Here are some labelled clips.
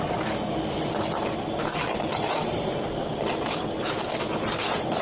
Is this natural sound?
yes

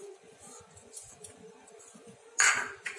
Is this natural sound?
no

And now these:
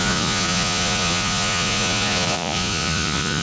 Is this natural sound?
no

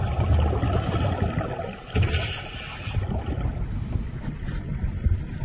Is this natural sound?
yes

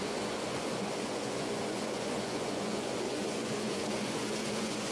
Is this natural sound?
no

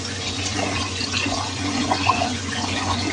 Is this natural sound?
no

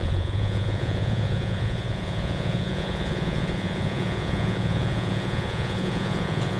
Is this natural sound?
no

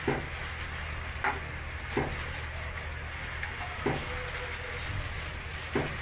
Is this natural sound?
yes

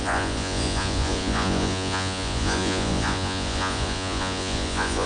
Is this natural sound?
no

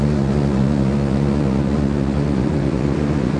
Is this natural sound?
no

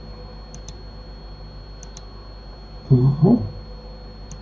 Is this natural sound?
yes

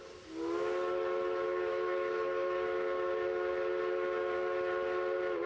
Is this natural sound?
yes